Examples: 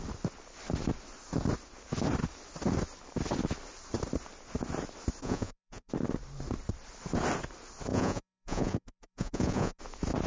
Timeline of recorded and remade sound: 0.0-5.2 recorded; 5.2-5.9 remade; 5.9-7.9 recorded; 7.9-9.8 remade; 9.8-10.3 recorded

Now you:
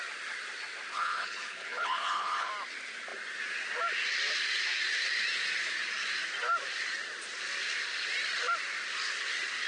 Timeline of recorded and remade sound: 0.0-0.9 recorded; 0.9-2.5 remade; 2.5-9.7 recorded

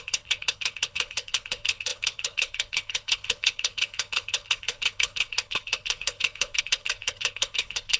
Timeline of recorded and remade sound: 0.0-8.0 remade